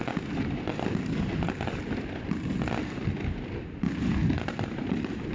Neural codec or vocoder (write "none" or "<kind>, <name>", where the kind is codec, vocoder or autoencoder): none